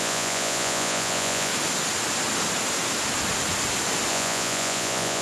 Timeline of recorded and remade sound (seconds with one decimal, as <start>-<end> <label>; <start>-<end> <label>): 0.0-1.5 remade; 1.5-4.1 recorded; 4.1-5.2 remade